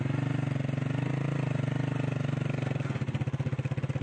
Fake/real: real